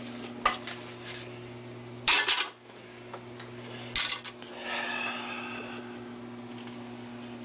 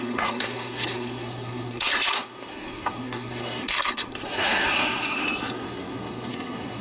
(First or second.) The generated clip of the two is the second